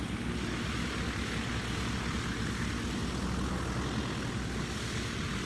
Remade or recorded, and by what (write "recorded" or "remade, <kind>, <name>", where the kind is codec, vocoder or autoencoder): recorded